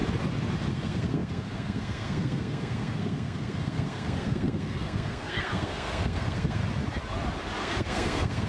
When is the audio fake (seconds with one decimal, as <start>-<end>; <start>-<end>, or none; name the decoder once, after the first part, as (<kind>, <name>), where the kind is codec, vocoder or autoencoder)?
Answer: 0.7-6.6 (codec, SNAC); 7.6-8.5